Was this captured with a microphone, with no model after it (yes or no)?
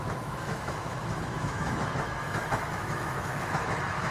no